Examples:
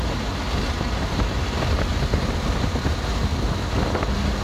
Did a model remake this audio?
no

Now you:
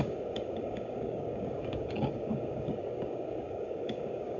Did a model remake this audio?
yes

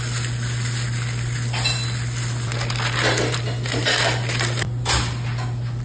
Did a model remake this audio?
no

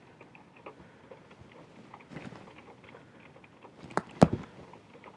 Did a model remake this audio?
no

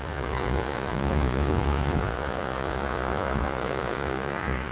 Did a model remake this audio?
yes